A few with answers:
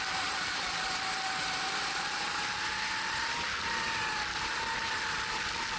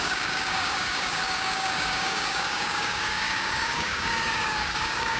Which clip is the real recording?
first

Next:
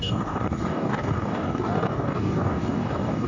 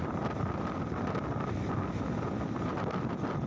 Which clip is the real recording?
second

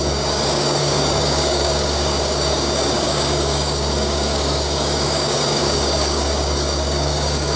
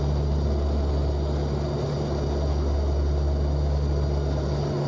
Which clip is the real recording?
second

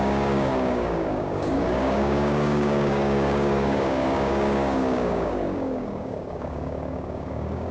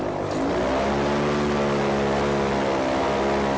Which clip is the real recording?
second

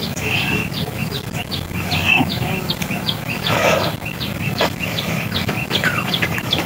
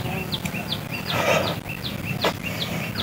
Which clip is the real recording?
second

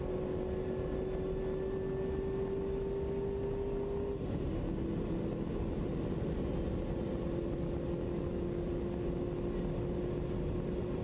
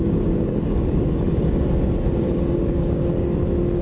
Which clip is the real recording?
first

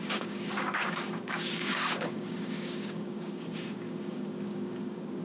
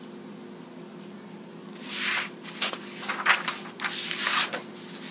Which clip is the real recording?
second